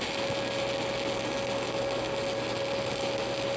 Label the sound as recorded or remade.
recorded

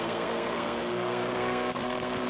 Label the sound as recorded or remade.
remade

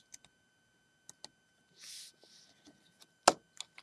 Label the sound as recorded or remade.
recorded